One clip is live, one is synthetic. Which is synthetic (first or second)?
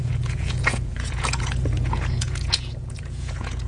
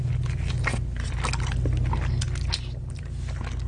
first